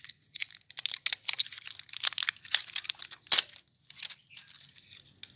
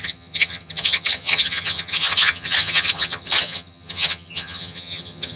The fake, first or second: second